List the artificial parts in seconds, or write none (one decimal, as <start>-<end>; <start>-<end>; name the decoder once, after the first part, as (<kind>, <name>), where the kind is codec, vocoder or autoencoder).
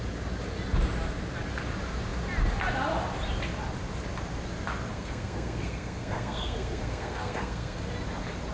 4.9-7.9 (codec, SNAC)